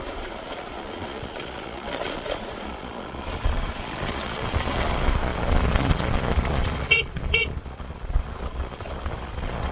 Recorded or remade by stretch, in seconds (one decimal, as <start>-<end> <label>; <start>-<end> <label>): 0.0-9.7 remade